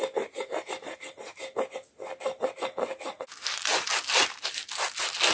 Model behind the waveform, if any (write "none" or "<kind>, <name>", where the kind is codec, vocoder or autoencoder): none